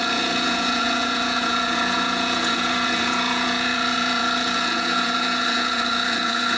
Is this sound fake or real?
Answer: fake